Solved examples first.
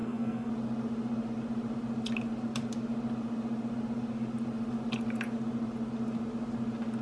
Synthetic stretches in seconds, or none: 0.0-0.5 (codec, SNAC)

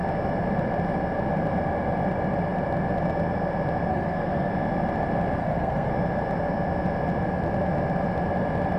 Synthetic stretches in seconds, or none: 3.9-4.5 (codec, SNAC); 5.4-5.9

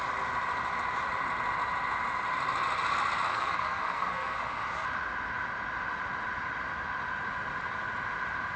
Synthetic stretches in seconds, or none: 3.3-4.6 (codec, SNAC)

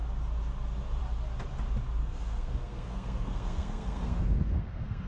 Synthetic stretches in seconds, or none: 2.0-5.1 (codec, SNAC)